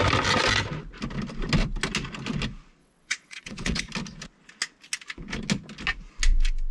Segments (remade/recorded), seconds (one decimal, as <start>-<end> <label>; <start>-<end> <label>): 0.0-2.8 recorded; 2.8-3.8 remade; 3.8-6.7 recorded